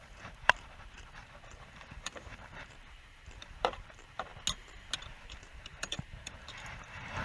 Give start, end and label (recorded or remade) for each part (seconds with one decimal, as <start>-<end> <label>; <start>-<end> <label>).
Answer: 0.0-4.3 remade; 4.3-5.0 recorded; 5.0-7.2 remade